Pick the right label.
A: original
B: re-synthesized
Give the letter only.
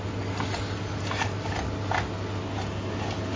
A